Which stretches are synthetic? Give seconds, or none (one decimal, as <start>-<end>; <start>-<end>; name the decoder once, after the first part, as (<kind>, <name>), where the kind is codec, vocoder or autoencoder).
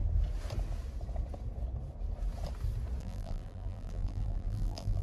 3.0-5.0 (vocoder, BigVGAN v2)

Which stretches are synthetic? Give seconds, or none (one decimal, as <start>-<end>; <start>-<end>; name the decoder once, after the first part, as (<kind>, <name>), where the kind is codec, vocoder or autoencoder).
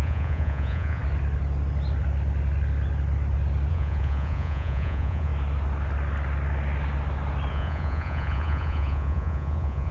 0.0-1.0 (vocoder, Vocos); 3.7-5.3; 7.5-9.9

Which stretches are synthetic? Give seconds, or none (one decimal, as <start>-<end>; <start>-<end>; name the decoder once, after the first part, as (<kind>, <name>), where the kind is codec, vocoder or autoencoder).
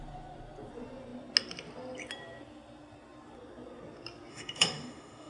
4.3-5.3 (autoencoder, DAC-VAE)